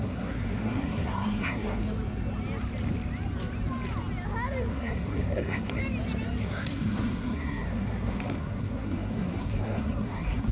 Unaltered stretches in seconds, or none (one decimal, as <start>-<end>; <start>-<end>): 1.8-4.7; 5.8-6.4

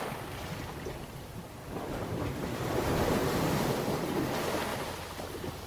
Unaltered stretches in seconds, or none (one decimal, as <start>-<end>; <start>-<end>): 1.6-2.2; 2.7-3.6

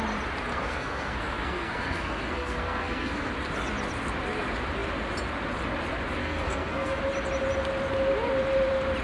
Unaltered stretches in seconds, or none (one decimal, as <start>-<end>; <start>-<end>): 0.0-0.5; 3.3-6.2; 7.0-9.0

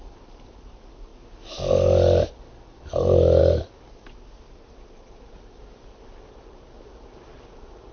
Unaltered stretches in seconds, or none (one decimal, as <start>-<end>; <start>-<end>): 0.0-7.9

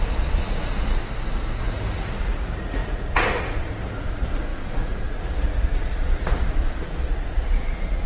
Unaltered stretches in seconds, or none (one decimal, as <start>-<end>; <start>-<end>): 1.0-1.6

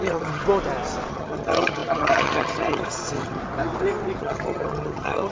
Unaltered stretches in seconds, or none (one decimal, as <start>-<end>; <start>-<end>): 0.4-1.1; 3.4-4.2